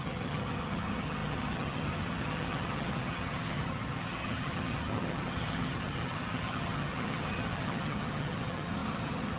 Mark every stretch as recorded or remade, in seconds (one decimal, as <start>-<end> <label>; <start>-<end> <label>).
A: 0.0-9.4 remade